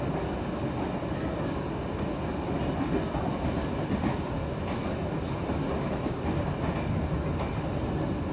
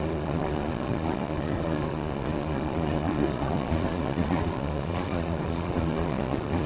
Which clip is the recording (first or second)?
first